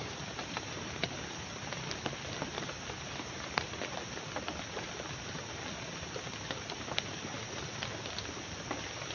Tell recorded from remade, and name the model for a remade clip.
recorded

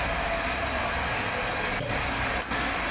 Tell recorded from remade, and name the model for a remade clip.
recorded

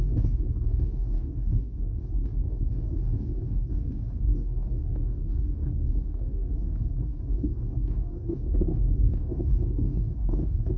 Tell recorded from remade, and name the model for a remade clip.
remade, codec, DAC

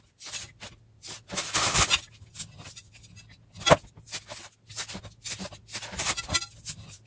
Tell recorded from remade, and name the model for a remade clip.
recorded